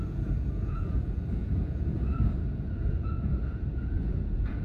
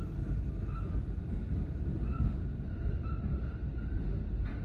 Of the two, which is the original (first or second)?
second